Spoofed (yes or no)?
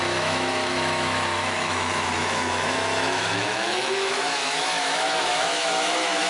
yes